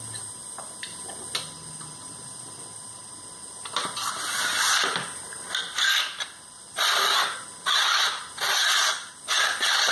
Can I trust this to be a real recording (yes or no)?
yes